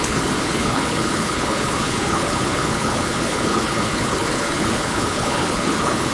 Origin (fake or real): fake